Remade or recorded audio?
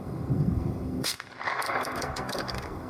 remade